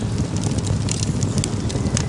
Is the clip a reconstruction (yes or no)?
no